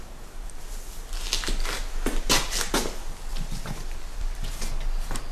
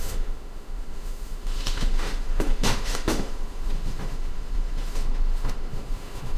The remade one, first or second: second